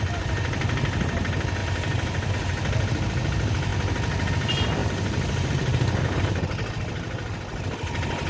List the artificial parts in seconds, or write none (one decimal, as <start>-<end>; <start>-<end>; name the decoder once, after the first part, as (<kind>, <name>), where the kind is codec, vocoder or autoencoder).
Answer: 1.6-2.3 (vocoder, BigVGAN v2); 4.8-5.5